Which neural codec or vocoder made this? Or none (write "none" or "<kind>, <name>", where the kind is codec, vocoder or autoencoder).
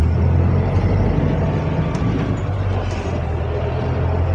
none